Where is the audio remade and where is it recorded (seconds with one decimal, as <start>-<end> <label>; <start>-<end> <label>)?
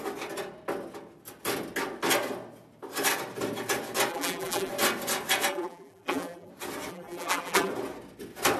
0.0-4.1 recorded; 4.1-4.7 remade; 4.7-5.5 recorded; 5.5-6.5 remade; 6.5-6.9 recorded; 6.9-7.7 remade; 7.7-8.6 recorded